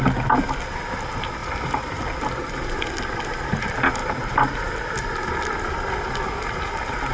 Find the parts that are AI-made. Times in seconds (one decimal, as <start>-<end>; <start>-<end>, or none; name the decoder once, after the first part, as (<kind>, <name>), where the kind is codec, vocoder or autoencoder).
1.4-2.0 (vocoder, BigVGAN v2); 4.0-4.6